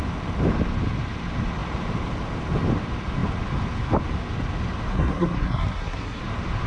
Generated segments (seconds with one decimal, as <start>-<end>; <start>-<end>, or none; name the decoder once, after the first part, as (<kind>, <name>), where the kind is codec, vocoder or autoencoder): 4.9-6.2 (codec, SNAC)